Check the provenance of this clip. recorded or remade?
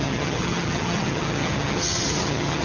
remade